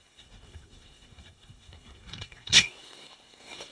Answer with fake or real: fake